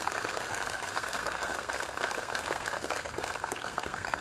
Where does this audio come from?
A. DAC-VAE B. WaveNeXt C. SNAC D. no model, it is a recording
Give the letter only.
C